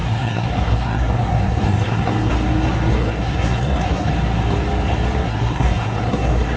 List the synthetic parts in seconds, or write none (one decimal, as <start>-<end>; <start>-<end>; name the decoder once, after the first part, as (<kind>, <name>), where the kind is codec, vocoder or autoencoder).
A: 0.0-2.3 (codec, SNAC); 2.9-4.1; 5.2-6.6